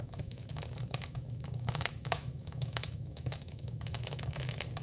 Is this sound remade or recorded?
remade